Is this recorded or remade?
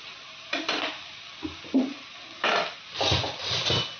recorded